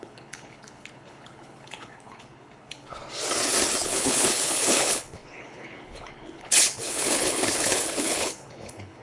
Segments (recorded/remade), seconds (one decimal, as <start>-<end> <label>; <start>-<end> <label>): 0.0-3.0 remade; 3.0-3.8 recorded; 3.8-9.0 remade